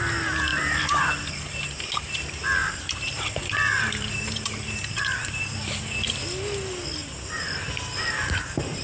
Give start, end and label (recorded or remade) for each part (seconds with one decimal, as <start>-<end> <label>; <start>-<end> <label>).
0.0-0.5 recorded; 0.5-1.3 remade; 1.3-2.6 recorded; 2.6-5.8 remade; 5.8-7.0 recorded; 7.0-8.8 remade